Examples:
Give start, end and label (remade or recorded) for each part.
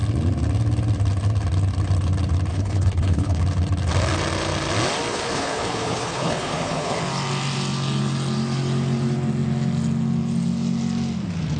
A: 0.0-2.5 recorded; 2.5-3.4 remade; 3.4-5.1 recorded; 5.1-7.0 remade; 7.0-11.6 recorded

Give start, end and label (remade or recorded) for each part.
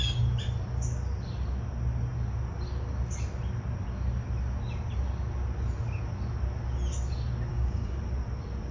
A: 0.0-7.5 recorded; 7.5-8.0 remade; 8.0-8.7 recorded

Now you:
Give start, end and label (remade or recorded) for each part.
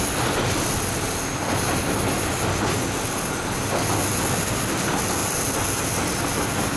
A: 0.0-6.8 recorded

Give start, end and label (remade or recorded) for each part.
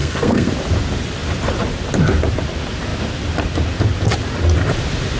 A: 0.0-0.5 remade; 0.5-5.2 recorded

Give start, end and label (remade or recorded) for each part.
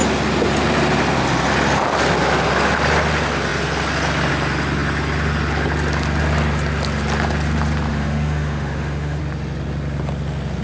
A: 0.0-7.9 recorded; 7.9-9.2 remade; 9.2-10.6 recorded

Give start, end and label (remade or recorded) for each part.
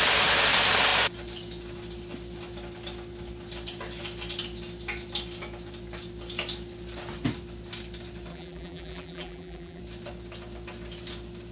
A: 0.0-8.3 recorded; 8.3-9.8 remade; 9.8-11.5 recorded